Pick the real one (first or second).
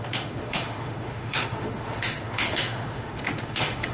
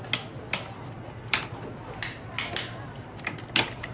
second